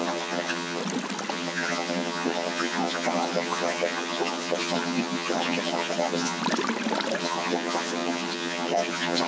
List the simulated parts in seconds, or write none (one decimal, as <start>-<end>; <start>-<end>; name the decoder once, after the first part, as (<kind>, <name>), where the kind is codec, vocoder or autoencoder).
0.0-0.8 (vocoder, HiFi-GAN); 1.3-6.4; 7.2-9.3